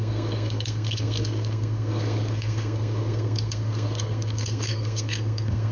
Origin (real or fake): fake